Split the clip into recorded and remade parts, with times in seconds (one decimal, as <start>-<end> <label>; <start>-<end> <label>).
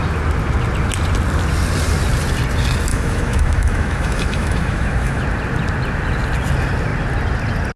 0.0-2.9 recorded; 2.9-5.2 remade; 5.2-7.8 recorded